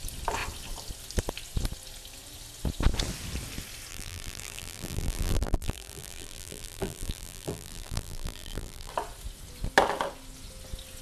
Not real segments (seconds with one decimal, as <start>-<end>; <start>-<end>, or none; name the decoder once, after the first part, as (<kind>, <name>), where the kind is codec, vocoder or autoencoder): 3.9-8.9 (vocoder, BigVGAN v2)